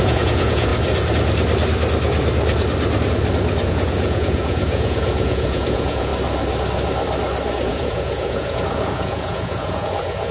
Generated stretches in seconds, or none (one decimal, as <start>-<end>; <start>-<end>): 0.0-0.7; 3.7-6.1; 7.5-10.3